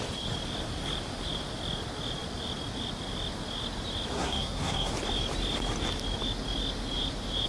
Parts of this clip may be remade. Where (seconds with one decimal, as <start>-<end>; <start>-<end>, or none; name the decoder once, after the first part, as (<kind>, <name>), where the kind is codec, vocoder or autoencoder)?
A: 4.1-4.9 (codec, SNAC)